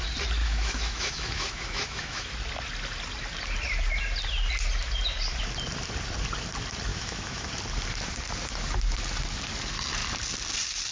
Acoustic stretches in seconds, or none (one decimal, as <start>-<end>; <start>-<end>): 0.0-0.4; 2.3-6.9; 7.5-10.9